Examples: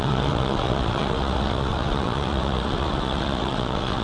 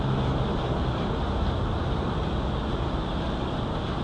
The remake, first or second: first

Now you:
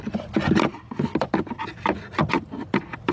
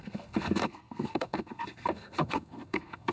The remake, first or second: second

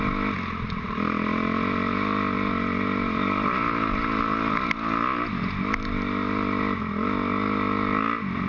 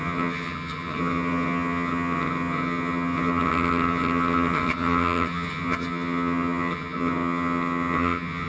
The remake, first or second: second